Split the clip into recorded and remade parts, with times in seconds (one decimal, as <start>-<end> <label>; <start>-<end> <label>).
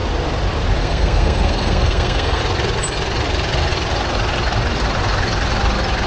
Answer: 0.0-0.8 recorded; 0.8-2.4 remade; 2.4-6.1 recorded